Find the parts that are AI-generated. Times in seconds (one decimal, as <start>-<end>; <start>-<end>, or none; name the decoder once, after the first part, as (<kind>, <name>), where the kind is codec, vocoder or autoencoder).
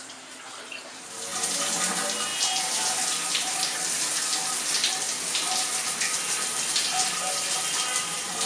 none